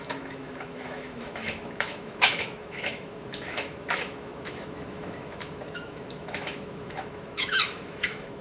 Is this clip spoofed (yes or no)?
yes